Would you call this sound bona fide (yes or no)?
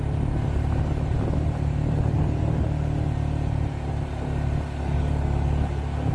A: yes